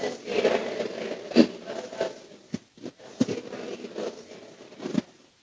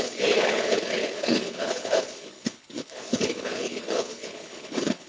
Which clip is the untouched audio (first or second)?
first